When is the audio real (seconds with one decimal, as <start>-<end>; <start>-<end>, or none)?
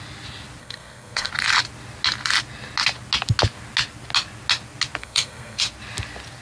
0.0-0.6; 1.3-5.0; 5.6-6.4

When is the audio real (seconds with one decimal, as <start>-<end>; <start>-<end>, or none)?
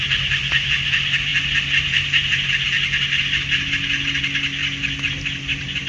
0.0-5.9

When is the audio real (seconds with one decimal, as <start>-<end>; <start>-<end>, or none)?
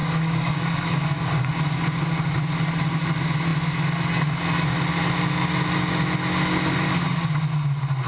1.5-8.1